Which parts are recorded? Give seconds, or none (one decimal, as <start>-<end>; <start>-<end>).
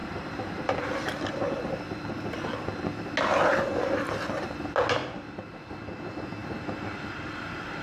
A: 0.8-7.8